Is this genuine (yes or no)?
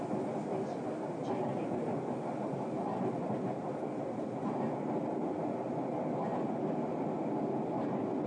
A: yes